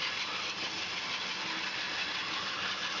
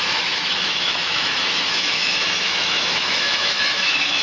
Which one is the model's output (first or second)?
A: second